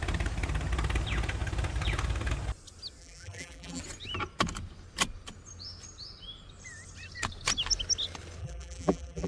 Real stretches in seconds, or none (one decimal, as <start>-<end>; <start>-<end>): 0.0-3.0; 3.8-8.4